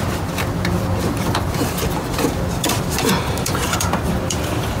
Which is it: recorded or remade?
remade